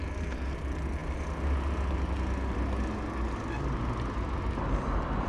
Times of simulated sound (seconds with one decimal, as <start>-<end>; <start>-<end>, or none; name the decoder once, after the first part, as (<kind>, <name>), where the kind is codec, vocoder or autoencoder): none